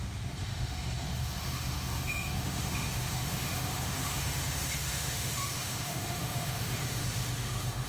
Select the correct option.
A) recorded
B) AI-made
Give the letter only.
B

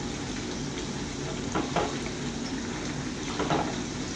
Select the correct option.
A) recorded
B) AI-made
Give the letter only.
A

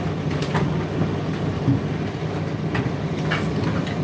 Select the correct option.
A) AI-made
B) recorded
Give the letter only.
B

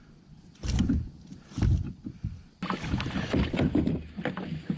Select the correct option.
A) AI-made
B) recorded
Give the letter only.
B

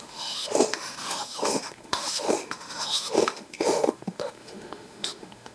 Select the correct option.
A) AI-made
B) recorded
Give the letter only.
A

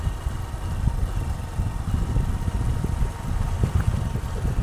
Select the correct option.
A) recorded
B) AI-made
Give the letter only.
A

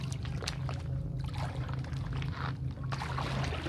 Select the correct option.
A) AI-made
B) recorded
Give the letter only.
B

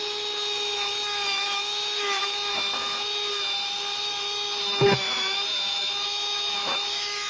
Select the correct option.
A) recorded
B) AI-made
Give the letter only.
B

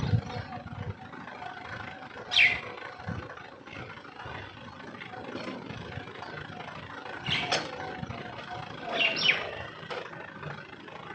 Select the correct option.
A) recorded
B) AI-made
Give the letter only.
A